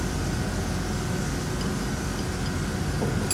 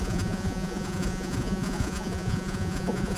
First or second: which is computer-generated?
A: second